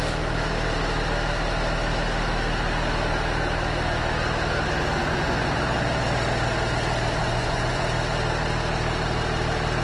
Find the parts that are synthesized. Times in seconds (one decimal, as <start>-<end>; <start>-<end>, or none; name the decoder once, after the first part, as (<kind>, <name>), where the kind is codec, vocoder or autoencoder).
5.0-5.6 (vocoder, Vocos); 7.2-7.8